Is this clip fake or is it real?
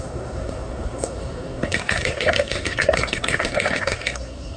fake